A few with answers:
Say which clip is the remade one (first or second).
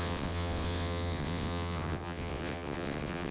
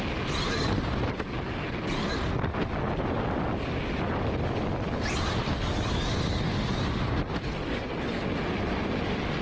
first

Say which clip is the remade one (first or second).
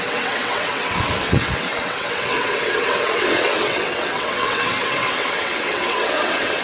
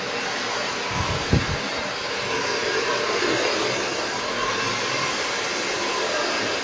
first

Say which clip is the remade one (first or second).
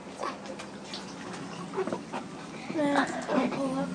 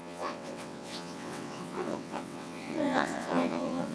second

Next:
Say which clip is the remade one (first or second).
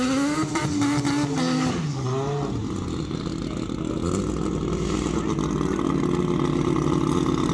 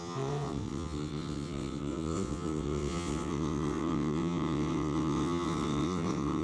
second